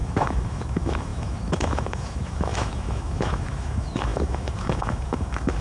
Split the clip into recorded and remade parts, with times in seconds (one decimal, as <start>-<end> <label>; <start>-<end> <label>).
0.0-5.6 remade